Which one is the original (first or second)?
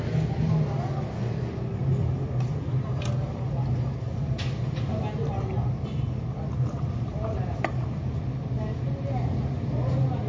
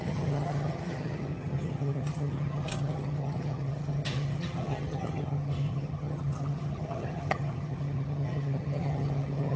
first